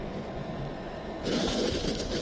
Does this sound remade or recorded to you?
remade